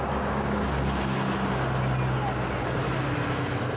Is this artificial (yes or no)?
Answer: no